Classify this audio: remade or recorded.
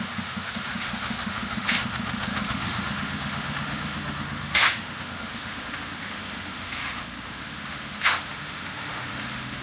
remade